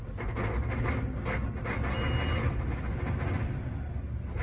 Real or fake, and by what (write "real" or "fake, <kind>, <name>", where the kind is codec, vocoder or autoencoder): real